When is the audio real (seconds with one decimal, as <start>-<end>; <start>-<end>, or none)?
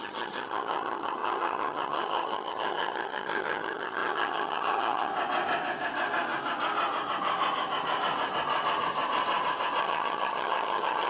5.1-9.8